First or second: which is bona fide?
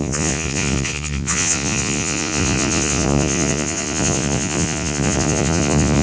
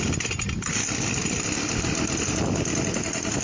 second